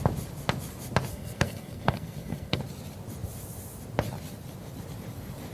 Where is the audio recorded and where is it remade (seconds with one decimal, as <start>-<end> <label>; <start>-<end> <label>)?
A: 0.0-1.1 recorded; 1.1-2.6 remade; 2.6-5.5 recorded